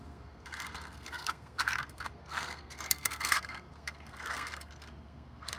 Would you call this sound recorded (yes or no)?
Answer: no